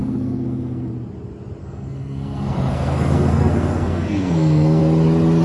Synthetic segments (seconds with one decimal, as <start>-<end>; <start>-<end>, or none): 0.0-0.9; 1.6-4.8